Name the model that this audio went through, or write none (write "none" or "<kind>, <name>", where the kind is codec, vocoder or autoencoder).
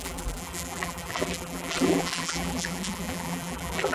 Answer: vocoder, BigVGAN v2